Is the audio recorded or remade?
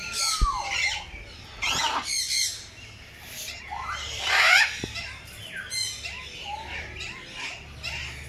recorded